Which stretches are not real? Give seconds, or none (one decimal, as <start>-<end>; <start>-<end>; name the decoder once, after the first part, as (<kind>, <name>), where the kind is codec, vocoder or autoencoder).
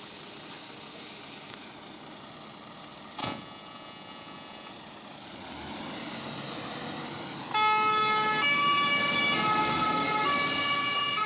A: 3.2-4.7 (vocoder, Vocos)